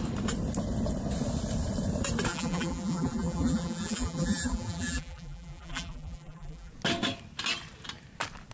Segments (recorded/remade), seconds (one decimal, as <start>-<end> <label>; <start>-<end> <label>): 0.0-2.3 recorded; 2.3-6.7 remade; 6.7-8.5 recorded